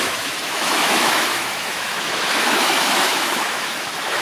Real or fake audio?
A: fake